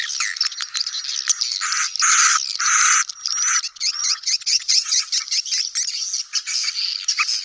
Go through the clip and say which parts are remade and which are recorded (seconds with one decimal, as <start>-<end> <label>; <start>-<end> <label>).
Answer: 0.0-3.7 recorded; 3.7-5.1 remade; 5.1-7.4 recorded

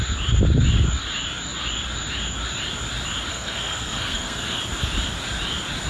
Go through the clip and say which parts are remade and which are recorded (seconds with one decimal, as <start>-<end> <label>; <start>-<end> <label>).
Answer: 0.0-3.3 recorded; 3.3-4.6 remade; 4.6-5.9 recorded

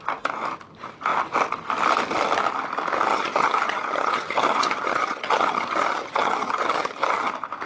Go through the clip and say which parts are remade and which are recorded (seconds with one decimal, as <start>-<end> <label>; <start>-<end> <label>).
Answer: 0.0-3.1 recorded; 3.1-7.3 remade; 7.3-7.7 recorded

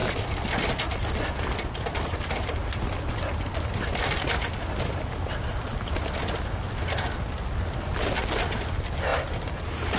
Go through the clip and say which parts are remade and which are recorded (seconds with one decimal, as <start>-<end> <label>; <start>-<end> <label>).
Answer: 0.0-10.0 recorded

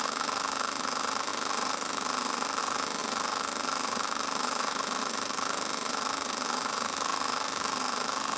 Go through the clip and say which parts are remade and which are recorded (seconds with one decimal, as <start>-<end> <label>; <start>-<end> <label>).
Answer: 0.0-8.4 remade

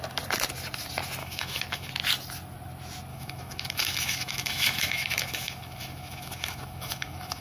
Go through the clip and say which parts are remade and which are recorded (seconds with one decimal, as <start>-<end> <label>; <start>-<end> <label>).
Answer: 0.0-1.2 recorded; 1.2-1.9 remade; 1.9-3.1 recorded; 3.1-7.4 remade